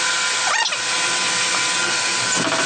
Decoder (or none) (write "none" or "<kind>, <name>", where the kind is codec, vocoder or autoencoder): none